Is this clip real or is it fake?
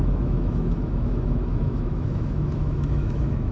fake